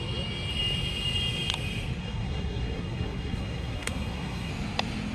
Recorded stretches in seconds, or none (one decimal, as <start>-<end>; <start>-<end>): 0.0-2.0; 4.5-5.1